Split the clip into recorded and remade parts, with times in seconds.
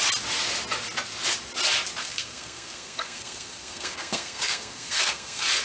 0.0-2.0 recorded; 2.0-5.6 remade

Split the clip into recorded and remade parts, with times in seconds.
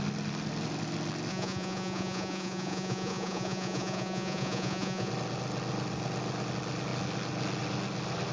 0.0-1.3 recorded; 1.3-5.1 remade; 5.1-8.3 recorded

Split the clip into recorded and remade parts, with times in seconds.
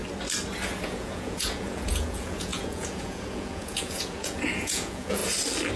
0.0-0.8 recorded; 0.8-5.2 remade; 5.2-5.8 recorded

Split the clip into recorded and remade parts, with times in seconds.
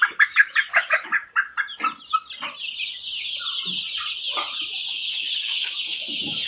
0.0-1.1 remade; 1.1-4.9 recorded; 4.9-6.5 remade